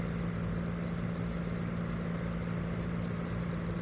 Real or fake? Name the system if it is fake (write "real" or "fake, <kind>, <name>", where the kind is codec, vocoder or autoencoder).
real